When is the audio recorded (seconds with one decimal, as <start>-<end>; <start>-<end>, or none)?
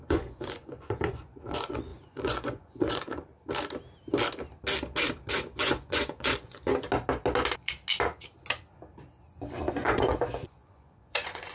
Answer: 3.3-5.4; 6.7-9.6